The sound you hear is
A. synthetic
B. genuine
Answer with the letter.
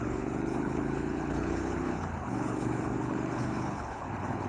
A